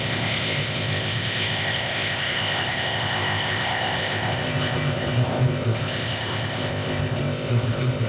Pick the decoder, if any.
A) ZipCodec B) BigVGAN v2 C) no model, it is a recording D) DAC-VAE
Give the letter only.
A